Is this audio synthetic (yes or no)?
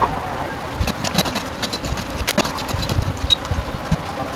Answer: no